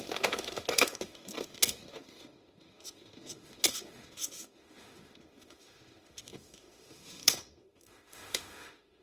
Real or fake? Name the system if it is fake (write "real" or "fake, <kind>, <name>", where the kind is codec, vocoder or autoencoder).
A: fake, autoencoder, DAC-VAE